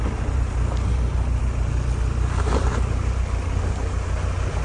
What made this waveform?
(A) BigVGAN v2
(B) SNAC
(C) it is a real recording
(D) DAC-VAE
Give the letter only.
C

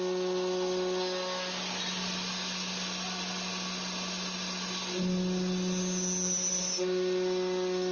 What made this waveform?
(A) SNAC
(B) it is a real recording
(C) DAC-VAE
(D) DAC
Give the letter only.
B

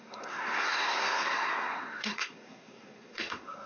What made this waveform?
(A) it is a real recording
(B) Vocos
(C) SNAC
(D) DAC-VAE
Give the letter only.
C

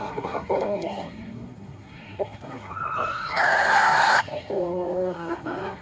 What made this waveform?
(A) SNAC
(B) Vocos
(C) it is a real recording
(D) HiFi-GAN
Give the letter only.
A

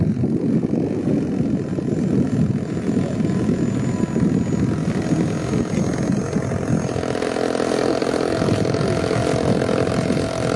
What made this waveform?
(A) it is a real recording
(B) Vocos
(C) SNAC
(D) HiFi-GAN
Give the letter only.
A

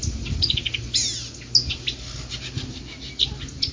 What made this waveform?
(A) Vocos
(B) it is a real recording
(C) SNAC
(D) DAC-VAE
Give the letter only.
B